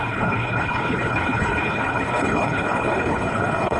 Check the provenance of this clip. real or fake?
fake